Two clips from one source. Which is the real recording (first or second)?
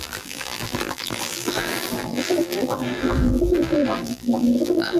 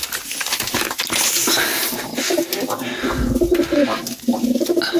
second